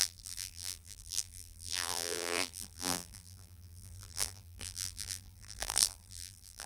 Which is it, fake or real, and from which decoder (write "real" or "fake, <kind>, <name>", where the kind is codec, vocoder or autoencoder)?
fake, vocoder, BigVGAN v2